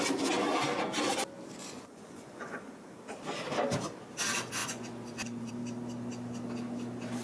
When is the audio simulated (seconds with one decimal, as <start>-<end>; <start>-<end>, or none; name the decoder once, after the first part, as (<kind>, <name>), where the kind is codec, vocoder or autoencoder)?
1.6-2.7 (vocoder, Vocos); 4.6-5.5